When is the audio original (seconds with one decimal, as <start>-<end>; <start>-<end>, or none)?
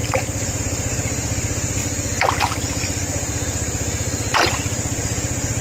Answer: 1.8-5.6